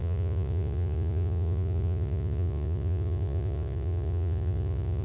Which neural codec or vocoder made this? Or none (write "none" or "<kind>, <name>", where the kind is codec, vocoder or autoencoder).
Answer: vocoder, Vocos